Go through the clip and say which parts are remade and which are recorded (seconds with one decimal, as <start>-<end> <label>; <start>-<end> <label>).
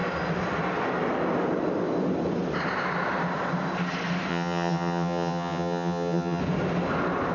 0.0-4.3 recorded; 4.3-6.4 remade; 6.4-7.3 recorded